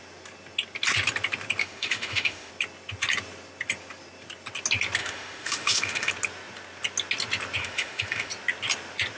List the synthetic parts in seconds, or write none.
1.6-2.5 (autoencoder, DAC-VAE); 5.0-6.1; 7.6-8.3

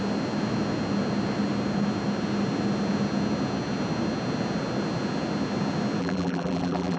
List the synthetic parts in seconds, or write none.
6.0-7.0 (vocoder, BigVGAN v2)

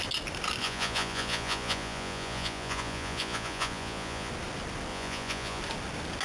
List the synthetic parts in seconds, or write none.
0.6-4.3 (vocoder, Vocos); 4.9-5.6

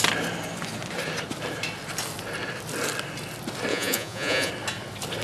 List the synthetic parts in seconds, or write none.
3.7-4.5 (vocoder, Vocos)

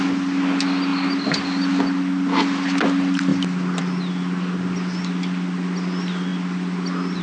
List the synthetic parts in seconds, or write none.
none

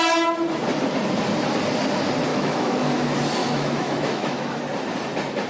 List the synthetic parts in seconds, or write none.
2.3-2.9 (autoencoder, DAC-VAE); 3.4-4.6

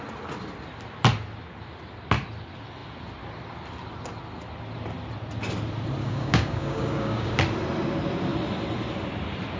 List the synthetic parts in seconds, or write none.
6.0-7.3 (codec, DAC)

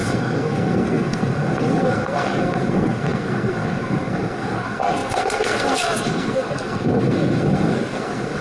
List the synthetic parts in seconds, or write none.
0.0-8.4 (codec, SNAC)